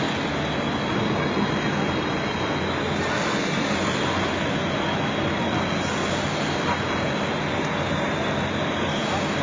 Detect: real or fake real